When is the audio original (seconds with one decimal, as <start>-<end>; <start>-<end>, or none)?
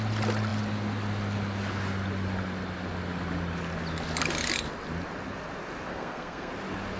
0.0-5.9; 6.5-7.0